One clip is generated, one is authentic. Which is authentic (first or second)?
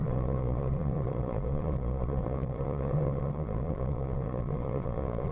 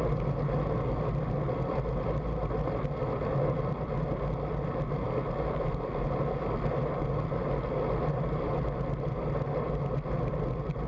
second